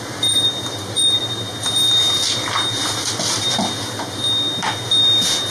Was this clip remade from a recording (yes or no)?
no